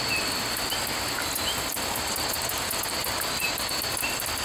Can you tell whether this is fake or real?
real